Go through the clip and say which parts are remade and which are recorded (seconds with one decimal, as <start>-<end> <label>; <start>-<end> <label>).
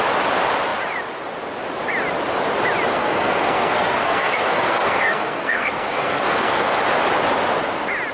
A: 0.0-2.9 recorded; 2.9-6.8 remade; 6.8-8.1 recorded